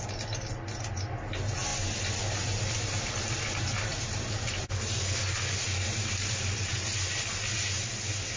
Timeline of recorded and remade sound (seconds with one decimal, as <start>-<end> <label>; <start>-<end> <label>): 0.0-8.4 recorded